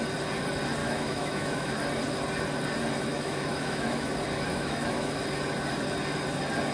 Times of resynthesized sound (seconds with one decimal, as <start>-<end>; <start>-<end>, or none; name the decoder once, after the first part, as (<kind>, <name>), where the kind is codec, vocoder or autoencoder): 0.8-1.7 (autoencoder, DAC-VAE); 3.1-4.1; 4.5-5.2